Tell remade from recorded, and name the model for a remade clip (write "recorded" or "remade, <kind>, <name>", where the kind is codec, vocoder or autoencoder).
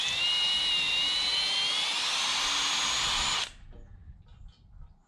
recorded